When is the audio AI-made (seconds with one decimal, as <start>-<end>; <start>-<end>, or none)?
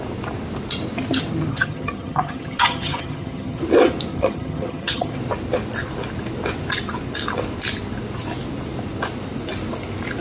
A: 1.5-3.6; 4.1-5.2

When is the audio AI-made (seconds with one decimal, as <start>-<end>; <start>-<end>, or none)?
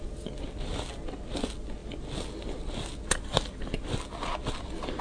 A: none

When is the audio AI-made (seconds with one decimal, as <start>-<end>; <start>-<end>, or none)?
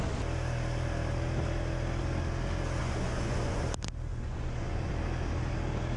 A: 2.8-3.6; 4.1-4.9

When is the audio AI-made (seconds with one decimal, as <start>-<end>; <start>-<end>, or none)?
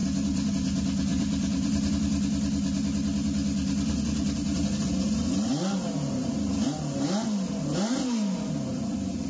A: 1.1-1.9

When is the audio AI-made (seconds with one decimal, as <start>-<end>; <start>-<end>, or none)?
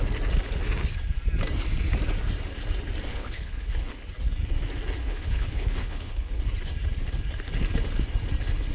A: 3.1-3.9; 5.0-6.4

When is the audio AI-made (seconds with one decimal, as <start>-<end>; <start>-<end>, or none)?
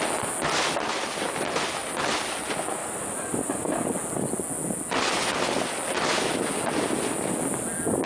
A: 2.8-3.7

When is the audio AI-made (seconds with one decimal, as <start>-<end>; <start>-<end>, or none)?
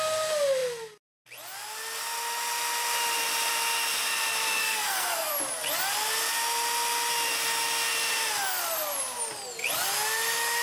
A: 4.6-5.3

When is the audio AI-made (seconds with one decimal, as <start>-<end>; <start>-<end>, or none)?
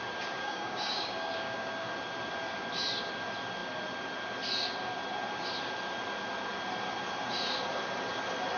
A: 0.4-1.9